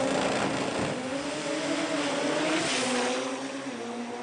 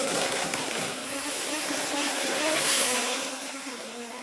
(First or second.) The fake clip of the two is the second